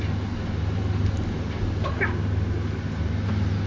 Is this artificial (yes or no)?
no